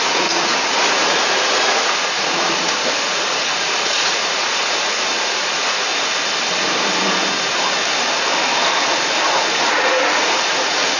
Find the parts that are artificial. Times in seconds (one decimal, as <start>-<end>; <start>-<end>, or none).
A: 0.0-5.9; 9.7-11.0

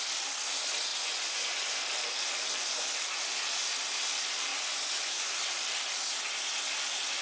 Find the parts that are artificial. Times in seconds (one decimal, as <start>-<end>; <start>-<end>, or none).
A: 0.9-1.8; 4.5-5.3